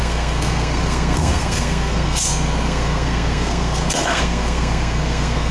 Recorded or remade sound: remade